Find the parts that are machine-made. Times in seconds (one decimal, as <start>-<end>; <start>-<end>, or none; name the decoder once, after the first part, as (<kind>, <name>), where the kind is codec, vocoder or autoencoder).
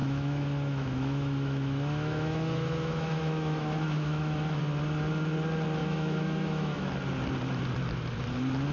0.0-4.6 (autoencoder, DAC-VAE); 5.8-6.9